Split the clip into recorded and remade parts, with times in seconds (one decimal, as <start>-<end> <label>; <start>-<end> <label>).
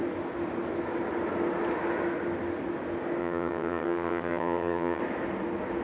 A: 0.0-3.2 recorded; 3.2-5.0 remade; 5.0-5.8 recorded